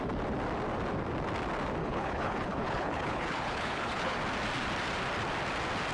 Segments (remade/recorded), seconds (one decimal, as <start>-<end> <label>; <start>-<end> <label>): 0.0-1.8 recorded; 1.8-4.2 remade; 4.2-5.9 recorded